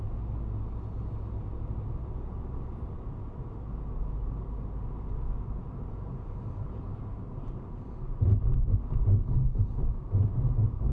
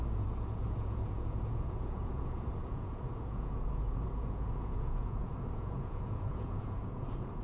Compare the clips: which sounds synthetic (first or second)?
second